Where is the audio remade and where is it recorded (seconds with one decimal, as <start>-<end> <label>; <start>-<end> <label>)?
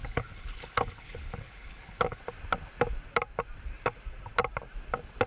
0.0-2.2 remade; 2.2-5.3 recorded